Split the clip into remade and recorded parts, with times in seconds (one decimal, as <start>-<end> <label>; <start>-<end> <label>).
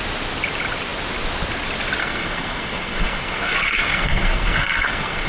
0.0-2.0 recorded; 2.0-5.3 remade